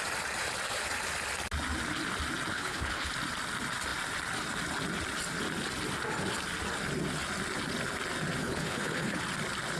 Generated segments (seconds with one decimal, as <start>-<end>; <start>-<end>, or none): 2.5-3.1; 8.4-9.2